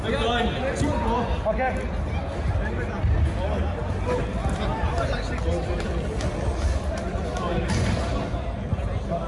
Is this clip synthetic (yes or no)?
no